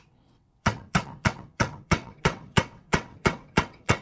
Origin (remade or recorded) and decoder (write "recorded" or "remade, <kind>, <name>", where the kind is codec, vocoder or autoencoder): remade, vocoder, WaveNeXt